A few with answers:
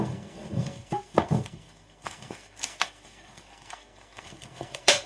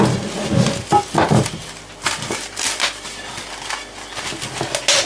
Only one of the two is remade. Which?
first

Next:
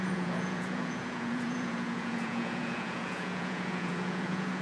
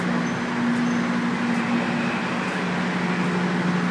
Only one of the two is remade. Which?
first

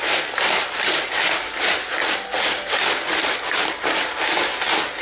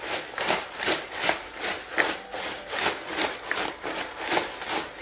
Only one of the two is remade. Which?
second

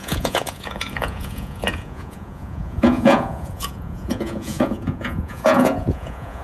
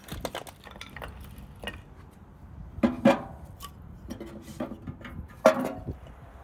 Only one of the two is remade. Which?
first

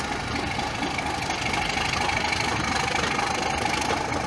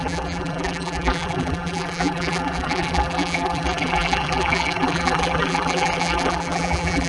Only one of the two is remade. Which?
second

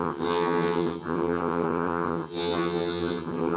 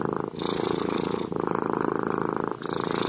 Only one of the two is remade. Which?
first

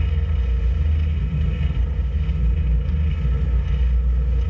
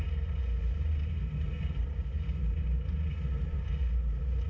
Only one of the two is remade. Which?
second